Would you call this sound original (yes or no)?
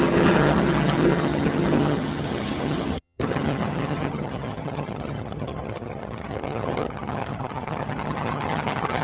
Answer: no